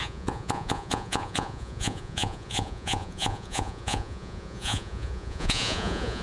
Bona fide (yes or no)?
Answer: no